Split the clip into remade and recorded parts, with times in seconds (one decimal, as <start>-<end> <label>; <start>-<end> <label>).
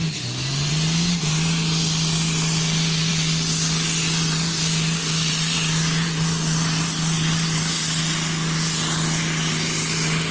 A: 0.0-10.3 recorded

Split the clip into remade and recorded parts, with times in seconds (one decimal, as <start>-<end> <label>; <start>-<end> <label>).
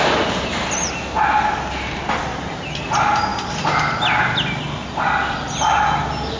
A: 0.0-6.4 recorded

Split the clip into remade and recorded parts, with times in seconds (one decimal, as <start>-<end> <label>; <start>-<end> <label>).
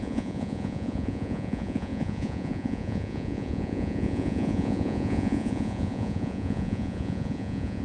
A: 0.0-7.8 remade